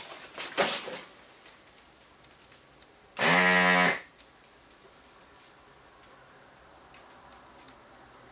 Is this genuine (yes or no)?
yes